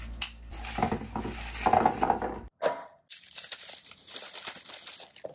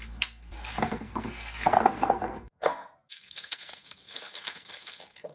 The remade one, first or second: second